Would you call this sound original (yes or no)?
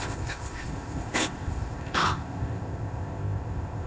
no